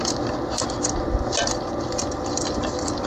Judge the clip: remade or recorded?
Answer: recorded